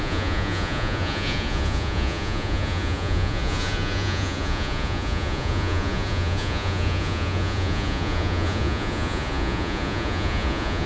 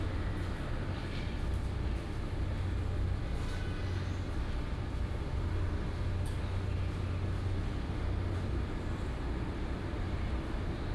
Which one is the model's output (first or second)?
first